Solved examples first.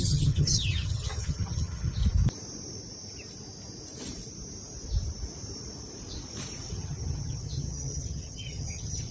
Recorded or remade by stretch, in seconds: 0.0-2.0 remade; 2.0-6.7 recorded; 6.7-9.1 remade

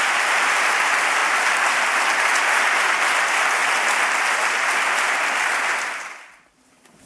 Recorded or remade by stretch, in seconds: 0.0-1.2 recorded; 1.2-2.8 remade; 2.8-3.6 recorded; 3.6-7.1 remade

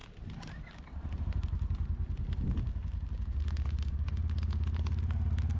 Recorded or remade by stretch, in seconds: 0.0-5.6 recorded

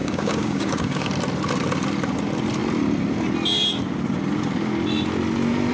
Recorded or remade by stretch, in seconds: 0.0-1.1 remade; 1.1-5.7 recorded

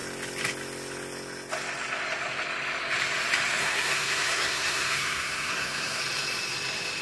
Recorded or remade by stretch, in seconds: 0.0-3.6 recorded; 3.6-6.0 remade; 6.0-7.0 recorded

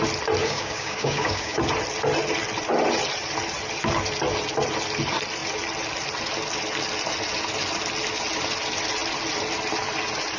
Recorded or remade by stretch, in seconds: 0.0-0.4 recorded; 0.4-1.6 remade; 1.6-10.4 recorded